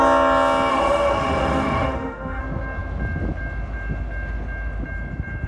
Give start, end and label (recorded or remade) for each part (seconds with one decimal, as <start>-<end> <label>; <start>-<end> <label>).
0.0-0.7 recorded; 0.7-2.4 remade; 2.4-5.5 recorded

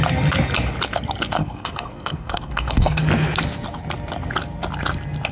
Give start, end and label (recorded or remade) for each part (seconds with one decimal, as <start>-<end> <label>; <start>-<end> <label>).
0.0-1.4 recorded; 1.4-3.0 remade; 3.0-5.3 recorded

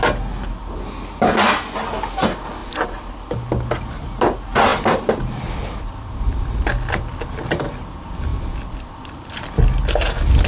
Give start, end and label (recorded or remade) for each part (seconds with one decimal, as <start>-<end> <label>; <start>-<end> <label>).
0.0-4.7 recorded; 4.7-6.7 remade; 6.7-10.5 recorded

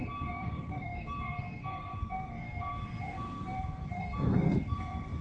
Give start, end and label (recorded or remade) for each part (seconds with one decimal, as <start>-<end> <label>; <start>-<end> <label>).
0.0-5.2 remade

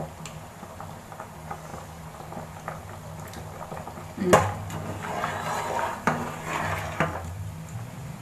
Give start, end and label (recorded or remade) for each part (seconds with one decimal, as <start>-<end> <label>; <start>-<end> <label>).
0.0-8.2 recorded

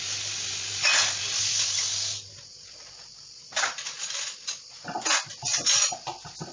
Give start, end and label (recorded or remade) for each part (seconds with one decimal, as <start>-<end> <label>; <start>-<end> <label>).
0.0-6.5 recorded

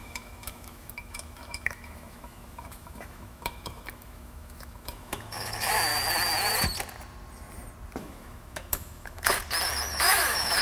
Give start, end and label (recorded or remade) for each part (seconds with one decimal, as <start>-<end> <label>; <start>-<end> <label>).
0.0-5.9 remade; 5.9-8.0 recorded; 8.0-9.4 remade; 9.4-9.9 recorded; 9.9-10.6 remade

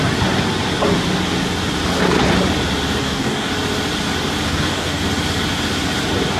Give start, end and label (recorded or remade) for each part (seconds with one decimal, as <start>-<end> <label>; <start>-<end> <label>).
0.0-3.0 recorded; 3.0-3.5 remade; 3.5-4.5 recorded; 4.5-5.0 remade; 5.0-6.4 recorded